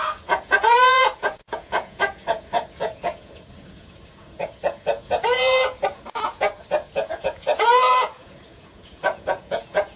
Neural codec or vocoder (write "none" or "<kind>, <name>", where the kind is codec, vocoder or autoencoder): vocoder, Vocos